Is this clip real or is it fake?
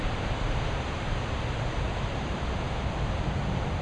fake